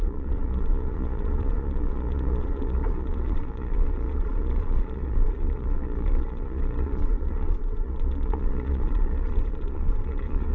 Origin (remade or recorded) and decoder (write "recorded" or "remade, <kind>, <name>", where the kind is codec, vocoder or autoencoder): remade, vocoder, Vocos